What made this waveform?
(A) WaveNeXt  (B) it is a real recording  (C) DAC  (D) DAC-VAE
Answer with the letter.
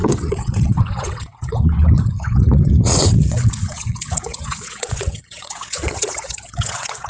A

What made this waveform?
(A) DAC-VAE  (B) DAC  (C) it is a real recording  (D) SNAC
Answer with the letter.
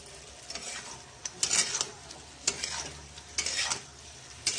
C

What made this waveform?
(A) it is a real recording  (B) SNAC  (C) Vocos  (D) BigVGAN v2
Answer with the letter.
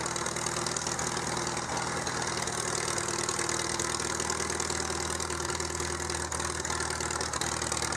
A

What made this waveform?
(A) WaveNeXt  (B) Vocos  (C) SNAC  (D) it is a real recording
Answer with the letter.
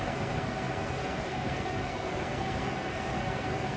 C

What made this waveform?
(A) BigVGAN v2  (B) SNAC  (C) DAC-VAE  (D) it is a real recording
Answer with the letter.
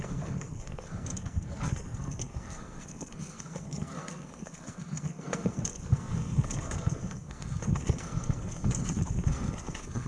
B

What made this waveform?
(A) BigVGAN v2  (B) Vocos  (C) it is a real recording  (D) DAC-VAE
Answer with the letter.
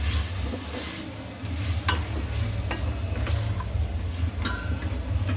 C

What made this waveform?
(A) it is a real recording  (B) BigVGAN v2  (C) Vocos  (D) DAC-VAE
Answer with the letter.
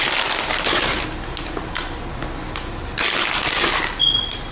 A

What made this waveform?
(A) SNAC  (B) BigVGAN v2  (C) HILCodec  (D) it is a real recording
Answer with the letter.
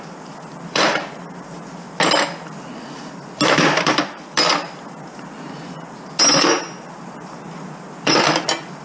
D